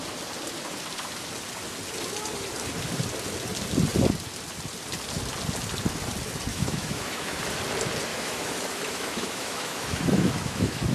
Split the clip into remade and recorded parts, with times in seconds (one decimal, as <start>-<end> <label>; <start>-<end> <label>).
0.0-6.5 recorded; 6.5-7.4 remade; 7.4-8.1 recorded; 8.1-10.9 remade